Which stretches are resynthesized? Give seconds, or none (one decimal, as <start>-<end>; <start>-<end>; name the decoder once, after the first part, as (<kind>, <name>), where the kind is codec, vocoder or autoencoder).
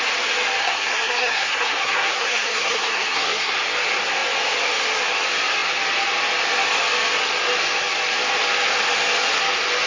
0.6-3.5 (codec, SNAC)